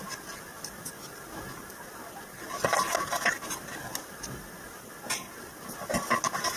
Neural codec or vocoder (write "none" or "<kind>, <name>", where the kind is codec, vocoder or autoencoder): none